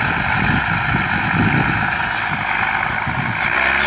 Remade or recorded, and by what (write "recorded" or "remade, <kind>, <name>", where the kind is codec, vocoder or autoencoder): recorded